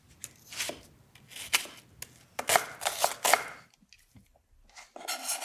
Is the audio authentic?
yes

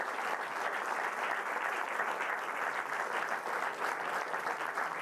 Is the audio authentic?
yes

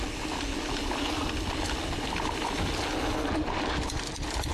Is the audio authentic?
yes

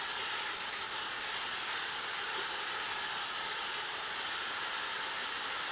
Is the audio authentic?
yes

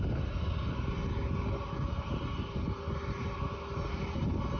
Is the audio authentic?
yes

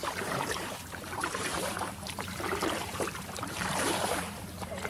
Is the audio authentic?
no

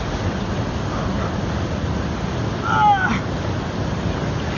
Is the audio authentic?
yes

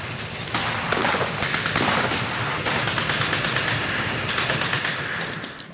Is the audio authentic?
no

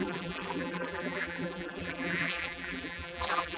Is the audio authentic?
no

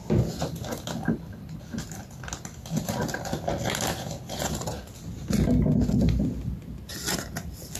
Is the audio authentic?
yes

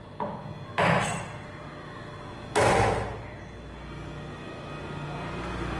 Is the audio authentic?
yes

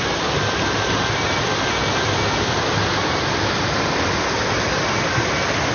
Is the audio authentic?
yes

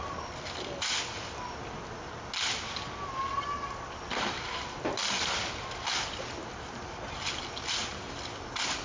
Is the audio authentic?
yes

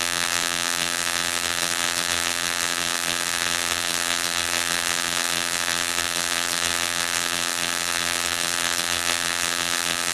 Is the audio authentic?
no